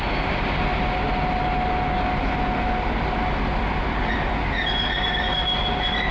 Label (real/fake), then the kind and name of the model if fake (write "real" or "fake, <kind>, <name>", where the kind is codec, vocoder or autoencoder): real